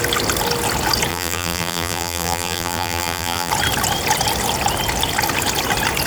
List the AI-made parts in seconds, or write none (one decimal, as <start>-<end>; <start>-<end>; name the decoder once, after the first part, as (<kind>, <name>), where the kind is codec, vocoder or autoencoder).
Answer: 1.1-3.5 (vocoder, BigVGAN v2)